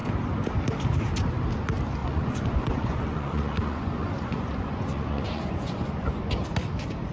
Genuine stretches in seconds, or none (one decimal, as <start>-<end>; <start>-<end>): 0.0-2.0; 6.3-7.1